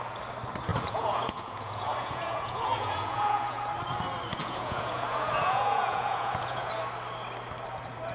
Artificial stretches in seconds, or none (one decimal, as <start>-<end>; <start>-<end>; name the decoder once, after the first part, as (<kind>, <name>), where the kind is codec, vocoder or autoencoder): 0.7-3.6 (vocoder, Vocos); 4.3-6.7